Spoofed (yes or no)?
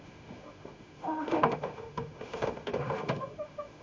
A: yes